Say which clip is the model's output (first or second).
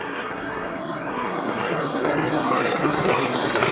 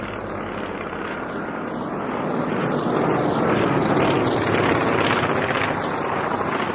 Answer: first